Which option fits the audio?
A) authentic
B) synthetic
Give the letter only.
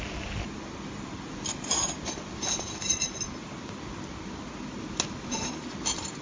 A